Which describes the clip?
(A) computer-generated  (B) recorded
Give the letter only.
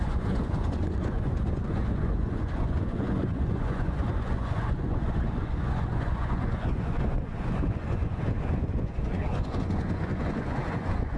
A